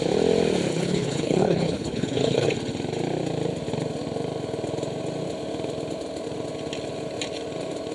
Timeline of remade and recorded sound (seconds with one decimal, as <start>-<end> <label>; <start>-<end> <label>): 0.0-0.7 recorded; 0.7-2.5 remade; 2.5-7.9 recorded